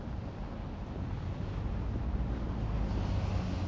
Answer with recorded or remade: recorded